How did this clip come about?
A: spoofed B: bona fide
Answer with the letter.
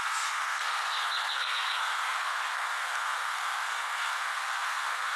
A